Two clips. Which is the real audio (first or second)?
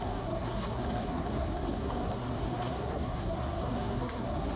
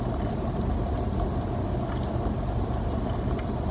second